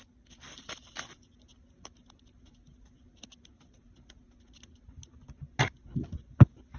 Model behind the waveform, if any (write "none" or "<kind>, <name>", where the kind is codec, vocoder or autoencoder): none